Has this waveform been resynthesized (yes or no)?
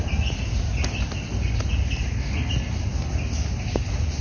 no